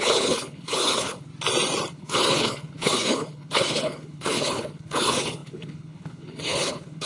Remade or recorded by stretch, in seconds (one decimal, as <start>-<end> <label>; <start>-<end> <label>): 0.0-1.3 remade; 1.3-1.9 recorded; 1.9-7.1 remade